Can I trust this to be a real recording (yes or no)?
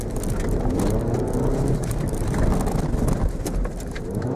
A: yes